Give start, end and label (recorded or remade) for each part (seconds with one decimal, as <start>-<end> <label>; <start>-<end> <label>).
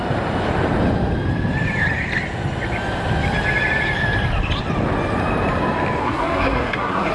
0.0-6.0 recorded; 6.0-7.1 remade